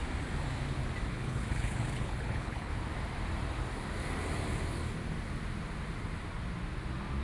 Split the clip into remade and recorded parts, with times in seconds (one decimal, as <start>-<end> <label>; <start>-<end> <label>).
0.0-1.1 recorded; 1.1-2.7 remade; 2.7-7.2 recorded